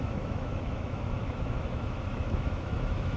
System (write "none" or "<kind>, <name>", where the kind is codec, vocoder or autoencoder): autoencoder, DAC-VAE